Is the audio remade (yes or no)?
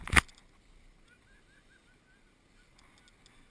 no